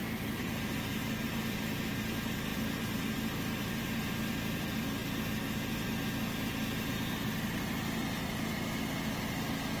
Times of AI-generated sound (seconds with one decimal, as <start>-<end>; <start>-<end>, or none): 0.0-0.5; 2.5-4.0